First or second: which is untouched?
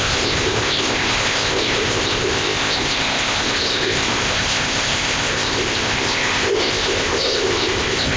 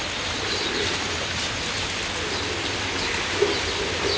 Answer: second